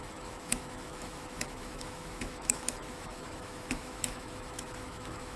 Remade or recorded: remade